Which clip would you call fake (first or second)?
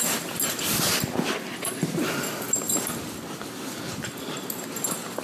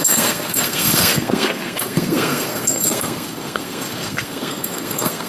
second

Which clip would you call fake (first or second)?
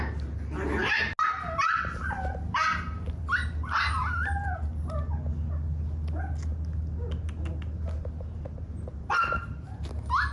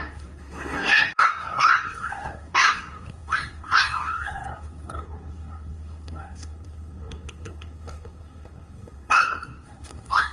second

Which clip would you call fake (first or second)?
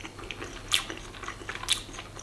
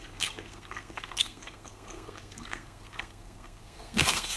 second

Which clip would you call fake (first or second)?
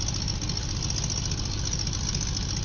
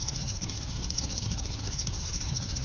second